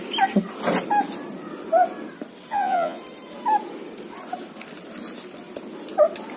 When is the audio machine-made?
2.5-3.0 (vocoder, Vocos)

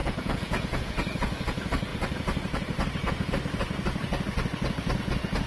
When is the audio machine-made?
0.0-1.9 (vocoder, Vocos); 5.0-5.5

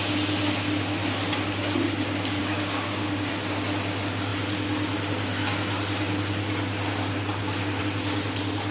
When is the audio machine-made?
2.4-3.3 (codec, DAC)

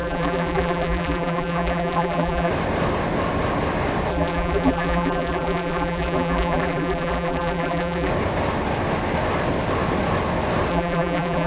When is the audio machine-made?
0.0-2.5 (vocoder, BigVGAN v2); 4.1-8.1; 10.7-11.5

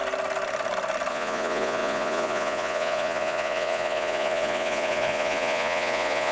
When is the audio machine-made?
1.1-6.3 (vocoder, Vocos)

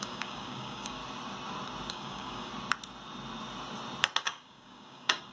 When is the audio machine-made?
0.0-1.0 (codec, DAC); 1.9-2.5; 4.2-5.3